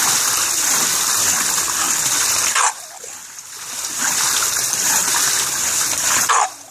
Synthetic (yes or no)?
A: yes